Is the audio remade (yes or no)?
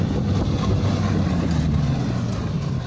no